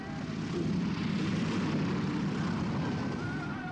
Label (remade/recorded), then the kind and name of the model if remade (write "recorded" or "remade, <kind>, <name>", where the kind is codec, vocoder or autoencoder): recorded